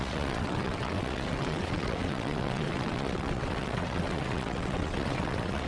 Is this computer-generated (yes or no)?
yes